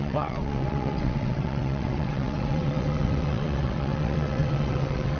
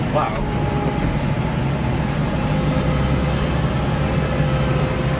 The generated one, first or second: first